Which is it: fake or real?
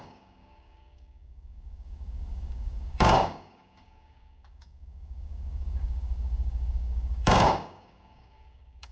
fake